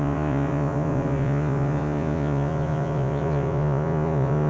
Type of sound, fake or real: fake